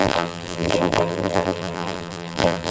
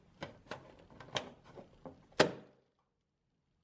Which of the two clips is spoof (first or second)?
first